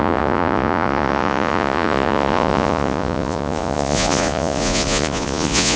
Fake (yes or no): yes